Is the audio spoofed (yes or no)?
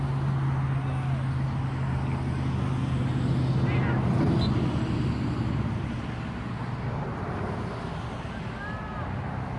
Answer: no